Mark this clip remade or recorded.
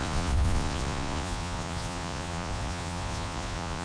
remade